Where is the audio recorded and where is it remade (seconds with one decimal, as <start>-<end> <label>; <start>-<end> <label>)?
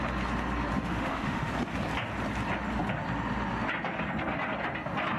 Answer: 0.0-0.7 recorded; 0.7-1.5 remade; 1.5-5.2 recorded